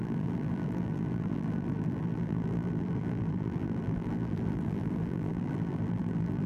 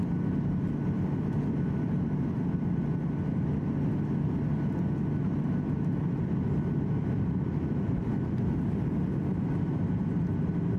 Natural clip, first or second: second